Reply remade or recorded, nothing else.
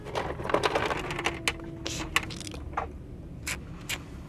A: recorded